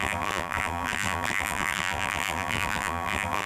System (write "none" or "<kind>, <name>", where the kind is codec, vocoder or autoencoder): vocoder, BigVGAN v2